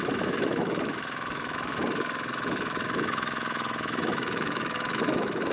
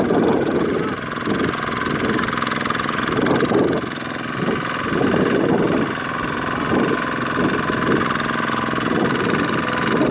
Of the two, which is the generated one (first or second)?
first